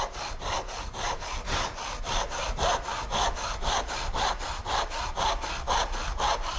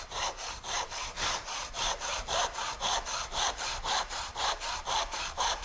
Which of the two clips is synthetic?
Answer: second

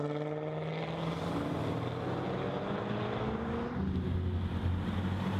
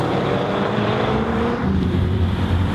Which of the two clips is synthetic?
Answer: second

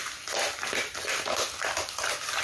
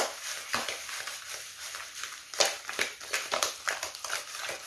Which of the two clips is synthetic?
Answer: second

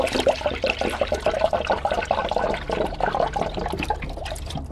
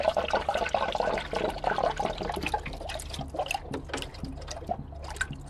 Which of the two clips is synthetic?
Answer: first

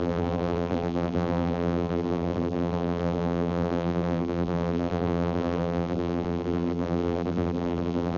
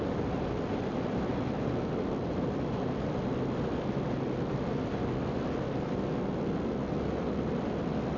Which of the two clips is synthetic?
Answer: first